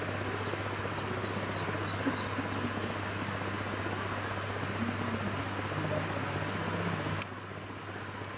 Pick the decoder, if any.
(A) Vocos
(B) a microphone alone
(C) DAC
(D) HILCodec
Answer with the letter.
B